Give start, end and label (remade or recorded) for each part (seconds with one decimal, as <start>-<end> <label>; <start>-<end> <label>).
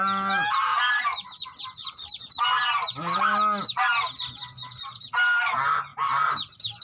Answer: 0.0-6.8 recorded